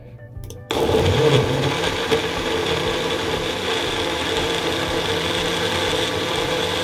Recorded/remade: remade